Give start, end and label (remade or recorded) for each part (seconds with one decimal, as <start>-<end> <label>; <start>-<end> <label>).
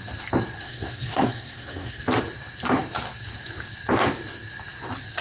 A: 0.0-0.6 recorded; 0.6-2.0 remade; 2.0-5.2 recorded